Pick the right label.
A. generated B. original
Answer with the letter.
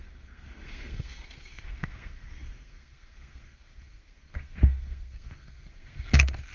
A